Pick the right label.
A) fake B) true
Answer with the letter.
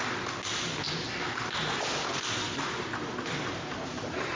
B